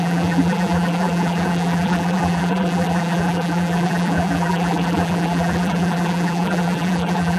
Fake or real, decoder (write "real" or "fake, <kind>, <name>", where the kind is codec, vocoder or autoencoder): fake, vocoder, BigVGAN v2